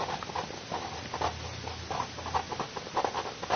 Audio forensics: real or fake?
real